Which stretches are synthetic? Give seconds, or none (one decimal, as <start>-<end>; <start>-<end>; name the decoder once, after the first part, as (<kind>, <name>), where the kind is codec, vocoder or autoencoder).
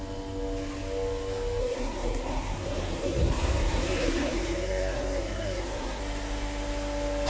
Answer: 1.6-6.0 (codec, SNAC)